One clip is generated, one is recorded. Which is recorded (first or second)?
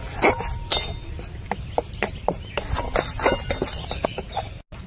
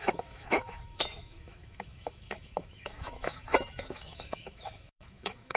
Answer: first